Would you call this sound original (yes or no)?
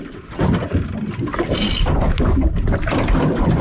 yes